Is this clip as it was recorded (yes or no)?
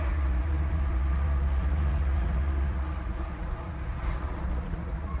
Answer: no